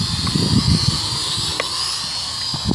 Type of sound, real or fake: real